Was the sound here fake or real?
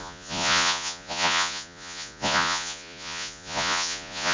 fake